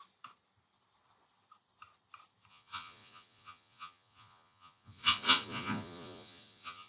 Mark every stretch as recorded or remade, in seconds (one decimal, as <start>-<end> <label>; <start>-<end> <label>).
0.0-2.5 recorded; 2.5-6.9 remade